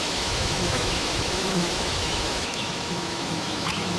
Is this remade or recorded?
remade